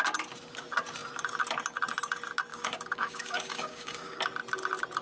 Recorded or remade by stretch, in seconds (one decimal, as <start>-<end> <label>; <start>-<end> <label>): 0.0-2.5 recorded; 2.5-4.2 remade; 4.2-5.0 recorded

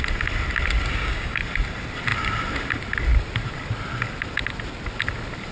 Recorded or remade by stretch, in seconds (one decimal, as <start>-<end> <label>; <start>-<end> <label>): 0.0-0.9 recorded; 0.9-1.4 remade; 1.4-5.5 recorded

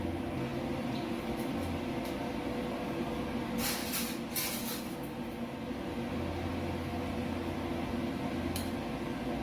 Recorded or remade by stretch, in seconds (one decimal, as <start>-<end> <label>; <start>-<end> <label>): 0.0-9.4 recorded

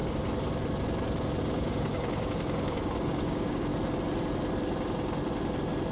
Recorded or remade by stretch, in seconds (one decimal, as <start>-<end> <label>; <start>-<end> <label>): 0.0-1.4 recorded; 1.4-3.7 remade; 3.7-5.9 recorded

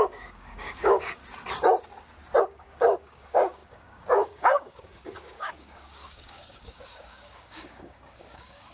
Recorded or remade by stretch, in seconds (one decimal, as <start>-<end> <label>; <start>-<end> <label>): 0.0-1.2 remade; 1.2-2.4 recorded; 2.4-8.7 remade